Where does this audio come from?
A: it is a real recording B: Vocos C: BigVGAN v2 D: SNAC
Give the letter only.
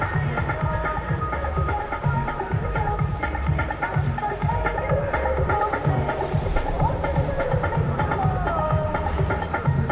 C